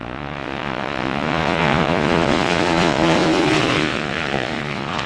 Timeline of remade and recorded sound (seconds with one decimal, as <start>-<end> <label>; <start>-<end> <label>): 0.0-5.1 remade